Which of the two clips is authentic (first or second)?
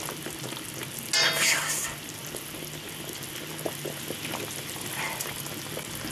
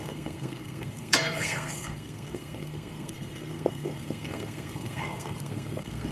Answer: first